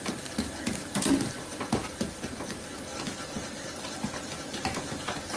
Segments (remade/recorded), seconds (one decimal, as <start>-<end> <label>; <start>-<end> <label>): 0.0-5.4 recorded